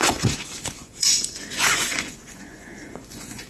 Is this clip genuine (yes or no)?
no